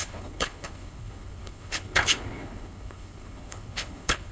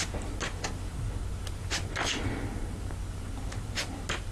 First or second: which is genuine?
second